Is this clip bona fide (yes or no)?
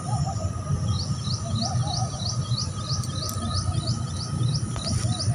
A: yes